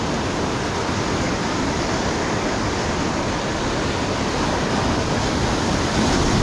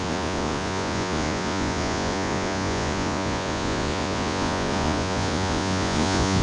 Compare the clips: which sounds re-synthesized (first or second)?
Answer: second